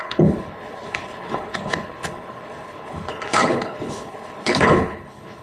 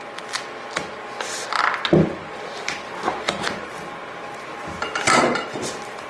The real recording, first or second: second